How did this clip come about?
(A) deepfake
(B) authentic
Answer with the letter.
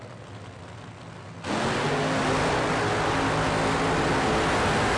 B